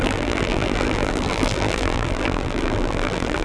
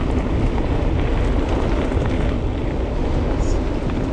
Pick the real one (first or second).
second